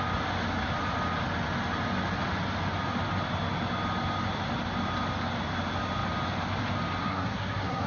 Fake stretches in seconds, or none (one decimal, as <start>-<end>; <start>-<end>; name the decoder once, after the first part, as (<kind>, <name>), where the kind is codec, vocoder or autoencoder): 7.0-7.9 (codec, SNAC)